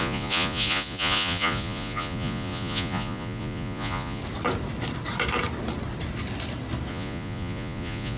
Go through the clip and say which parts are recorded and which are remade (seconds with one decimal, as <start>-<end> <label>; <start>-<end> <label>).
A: 0.0-4.2 remade; 4.2-6.9 recorded; 6.9-8.2 remade